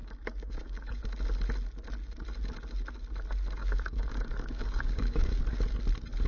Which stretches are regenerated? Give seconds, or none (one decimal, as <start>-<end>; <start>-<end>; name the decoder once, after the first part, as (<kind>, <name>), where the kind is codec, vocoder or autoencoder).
0.0-1.0 (codec, DAC); 3.6-5.4